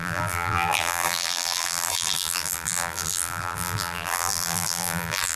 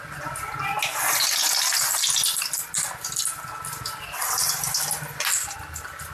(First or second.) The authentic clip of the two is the second